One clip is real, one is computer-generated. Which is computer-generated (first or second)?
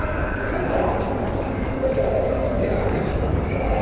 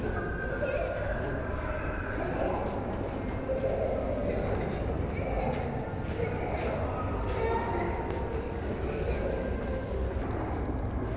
first